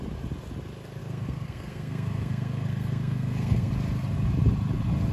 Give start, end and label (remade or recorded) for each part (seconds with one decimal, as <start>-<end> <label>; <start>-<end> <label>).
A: 0.0-1.0 recorded; 1.0-3.7 remade; 3.7-5.1 recorded